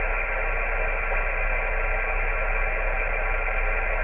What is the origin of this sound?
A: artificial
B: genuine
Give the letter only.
B